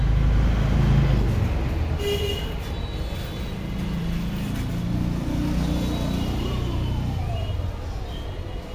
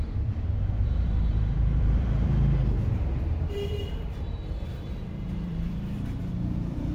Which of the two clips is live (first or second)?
first